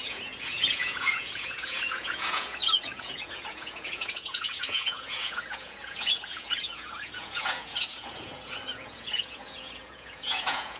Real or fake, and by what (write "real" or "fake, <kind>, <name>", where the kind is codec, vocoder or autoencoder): fake, vocoder, Vocos